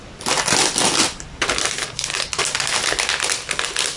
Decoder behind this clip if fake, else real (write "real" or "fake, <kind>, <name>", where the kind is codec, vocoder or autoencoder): real